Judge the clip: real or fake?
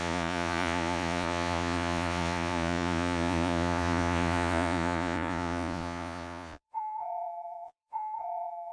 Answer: fake